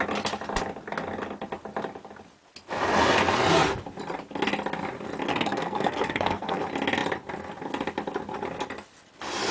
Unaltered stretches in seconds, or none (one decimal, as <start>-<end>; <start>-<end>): 0.0-5.3; 6.6-9.5